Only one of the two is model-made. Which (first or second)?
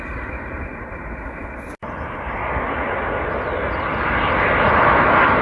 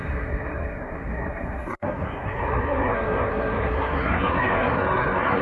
second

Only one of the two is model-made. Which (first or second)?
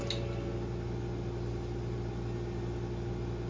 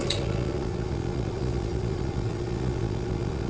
second